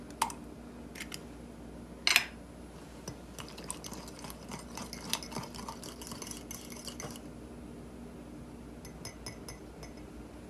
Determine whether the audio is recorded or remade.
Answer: recorded